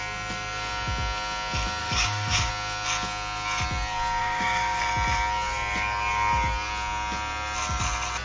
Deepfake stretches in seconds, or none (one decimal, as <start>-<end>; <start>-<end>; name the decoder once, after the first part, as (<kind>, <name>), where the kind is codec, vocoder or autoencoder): 1.8-2.5 (codec, DAC); 4.2-4.8